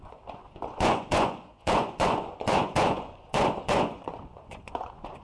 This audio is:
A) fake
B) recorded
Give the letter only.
A